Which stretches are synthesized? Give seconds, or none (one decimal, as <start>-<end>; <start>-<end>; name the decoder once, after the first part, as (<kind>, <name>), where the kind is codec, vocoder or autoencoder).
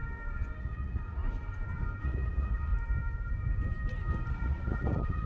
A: 0.6-1.2 (vocoder, Vocos); 2.0-2.7; 4.3-5.3